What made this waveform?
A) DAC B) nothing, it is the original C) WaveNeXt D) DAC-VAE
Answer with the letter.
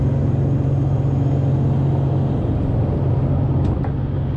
B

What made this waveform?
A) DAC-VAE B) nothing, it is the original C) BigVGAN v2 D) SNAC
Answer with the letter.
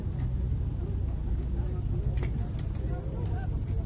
B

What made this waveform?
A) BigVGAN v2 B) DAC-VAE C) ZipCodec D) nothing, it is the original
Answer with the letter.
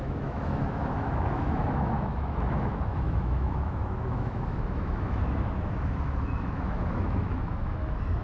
B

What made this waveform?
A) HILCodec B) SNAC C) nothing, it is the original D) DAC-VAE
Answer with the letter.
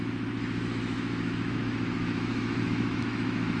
D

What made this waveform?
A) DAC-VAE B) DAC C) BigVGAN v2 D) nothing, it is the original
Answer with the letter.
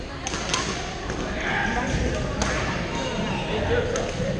D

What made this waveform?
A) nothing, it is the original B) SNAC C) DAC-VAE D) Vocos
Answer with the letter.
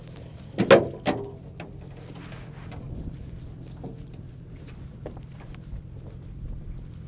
A